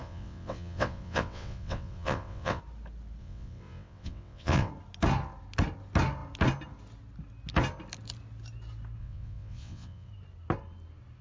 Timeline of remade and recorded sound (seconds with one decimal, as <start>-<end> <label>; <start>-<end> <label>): 0.0-2.6 remade; 2.6-3.2 recorded; 3.2-4.7 remade; 4.7-9.0 recorded; 9.0-10.1 remade; 10.1-11.2 recorded